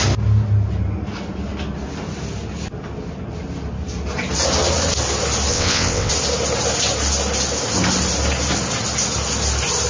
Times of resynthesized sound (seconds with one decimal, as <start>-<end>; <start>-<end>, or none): 5.5-6.1